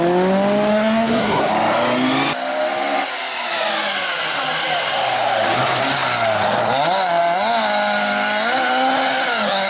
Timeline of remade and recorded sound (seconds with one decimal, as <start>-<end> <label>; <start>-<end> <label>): 0.0-0.7 recorded; 0.7-1.5 remade; 1.5-9.7 recorded